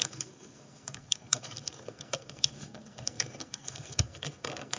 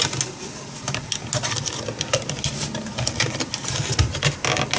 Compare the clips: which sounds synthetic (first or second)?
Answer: first